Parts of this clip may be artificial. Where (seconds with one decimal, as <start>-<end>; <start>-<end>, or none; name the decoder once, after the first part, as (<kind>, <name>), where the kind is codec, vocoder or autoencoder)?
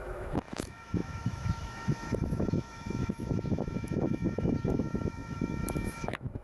0.0-6.4 (autoencoder, DAC-VAE)